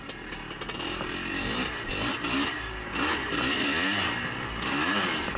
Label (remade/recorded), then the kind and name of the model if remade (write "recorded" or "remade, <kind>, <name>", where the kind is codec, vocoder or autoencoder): recorded